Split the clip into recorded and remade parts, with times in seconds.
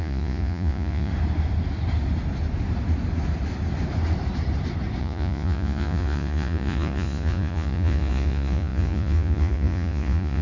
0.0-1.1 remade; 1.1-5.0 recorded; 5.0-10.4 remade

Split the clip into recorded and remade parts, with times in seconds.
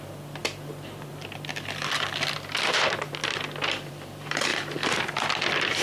0.0-5.8 recorded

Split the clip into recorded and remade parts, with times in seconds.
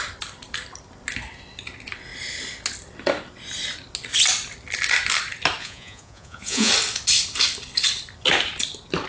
0.0-5.6 recorded; 5.6-6.7 remade; 6.7-9.1 recorded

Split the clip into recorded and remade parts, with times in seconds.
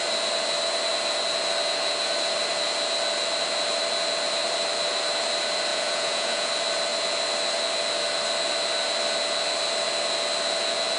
0.0-5.7 recorded; 5.7-6.5 remade; 6.5-11.0 recorded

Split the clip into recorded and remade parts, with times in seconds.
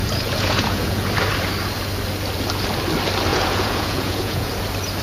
0.0-1.1 remade; 1.1-3.3 recorded; 3.3-4.5 remade; 4.5-5.0 recorded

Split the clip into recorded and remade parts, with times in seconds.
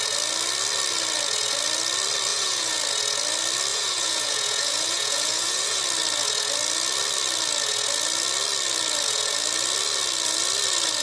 0.0-2.3 recorded; 2.3-2.8 remade; 2.8-3.7 recorded; 3.7-5.8 remade; 5.8-11.0 recorded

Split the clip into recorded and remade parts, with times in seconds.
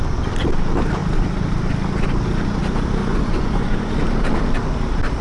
0.0-3.0 recorded; 3.0-3.9 remade; 3.9-5.2 recorded